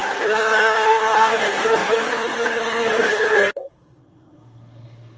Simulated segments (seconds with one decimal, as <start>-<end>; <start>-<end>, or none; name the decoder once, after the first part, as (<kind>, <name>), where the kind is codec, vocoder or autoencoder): 0.0-5.2 (codec, SNAC)